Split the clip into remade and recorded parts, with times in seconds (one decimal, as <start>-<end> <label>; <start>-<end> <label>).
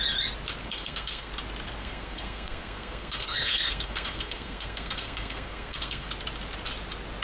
0.0-0.6 recorded; 0.6-1.3 remade; 1.3-1.8 recorded; 1.8-6.1 remade; 6.1-7.2 recorded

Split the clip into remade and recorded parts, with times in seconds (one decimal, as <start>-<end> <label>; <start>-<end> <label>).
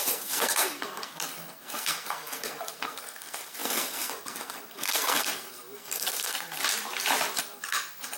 0.0-6.6 remade; 6.6-7.4 recorded; 7.4-8.2 remade